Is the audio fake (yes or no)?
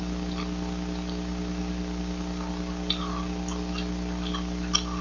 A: no